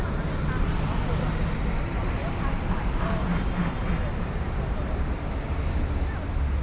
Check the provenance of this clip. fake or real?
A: real